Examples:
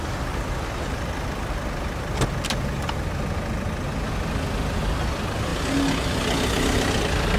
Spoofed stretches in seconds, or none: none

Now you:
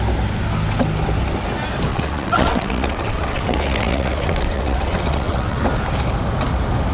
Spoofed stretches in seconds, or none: 1.9-5.6 (vocoder, WaveNeXt)

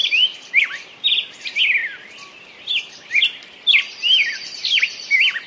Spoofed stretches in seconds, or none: none